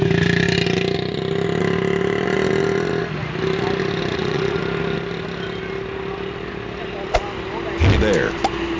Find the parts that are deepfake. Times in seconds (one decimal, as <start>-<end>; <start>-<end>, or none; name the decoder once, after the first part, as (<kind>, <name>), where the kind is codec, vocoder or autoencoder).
4.1-4.6 (vocoder, Vocos)